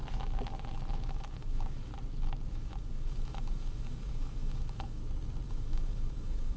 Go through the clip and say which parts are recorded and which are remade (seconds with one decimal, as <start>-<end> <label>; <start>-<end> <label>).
0.0-0.9 recorded; 0.9-1.9 remade; 1.9-2.5 recorded; 2.5-5.0 remade; 5.0-5.5 recorded; 5.5-6.6 remade